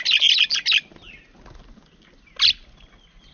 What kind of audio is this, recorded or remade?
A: recorded